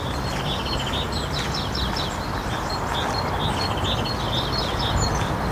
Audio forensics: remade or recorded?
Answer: recorded